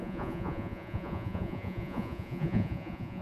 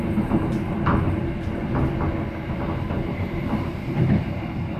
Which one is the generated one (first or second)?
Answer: first